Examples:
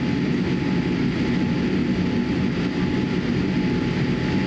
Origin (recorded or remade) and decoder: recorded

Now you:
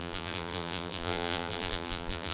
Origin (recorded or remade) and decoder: remade, vocoder, BigVGAN v2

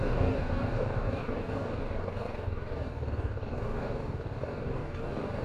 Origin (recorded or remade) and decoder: remade, codec, DAC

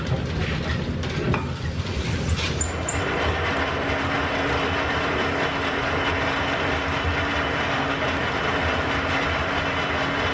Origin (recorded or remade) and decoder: recorded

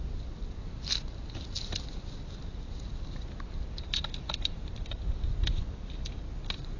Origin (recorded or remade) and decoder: recorded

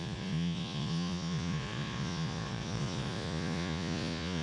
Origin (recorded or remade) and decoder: remade, vocoder, Vocos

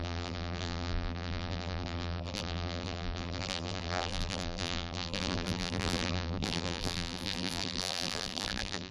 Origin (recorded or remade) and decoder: remade, vocoder, BigVGAN v2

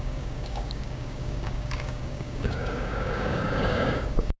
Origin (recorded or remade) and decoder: remade, codec, DAC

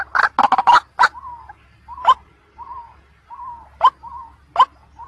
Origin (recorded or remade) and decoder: recorded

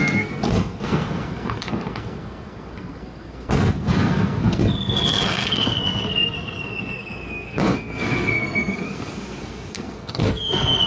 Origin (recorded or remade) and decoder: remade, codec, SNAC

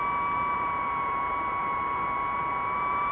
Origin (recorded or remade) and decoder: remade, vocoder, BigVGAN v2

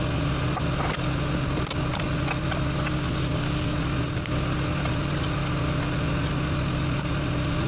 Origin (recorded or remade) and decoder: recorded